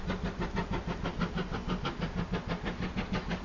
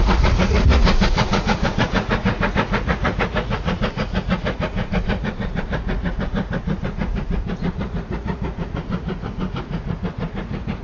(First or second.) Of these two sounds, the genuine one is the first